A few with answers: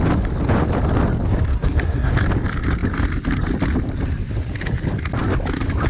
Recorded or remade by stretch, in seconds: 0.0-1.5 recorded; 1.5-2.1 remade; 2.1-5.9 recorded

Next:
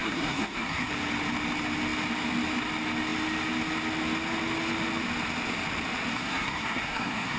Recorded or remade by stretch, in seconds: 0.0-0.9 remade; 0.9-6.1 recorded; 6.1-7.4 remade

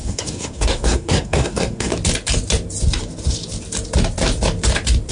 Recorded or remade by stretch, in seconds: 0.0-1.9 remade; 1.9-5.1 recorded

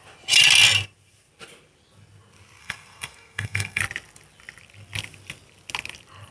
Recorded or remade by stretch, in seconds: 0.0-2.6 recorded; 2.6-3.8 remade; 3.8-6.3 recorded